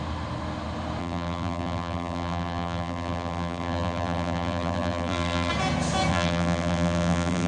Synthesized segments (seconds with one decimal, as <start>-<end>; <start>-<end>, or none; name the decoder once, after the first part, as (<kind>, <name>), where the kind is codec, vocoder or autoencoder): 1.0-5.5 (vocoder, BigVGAN v2); 6.1-7.5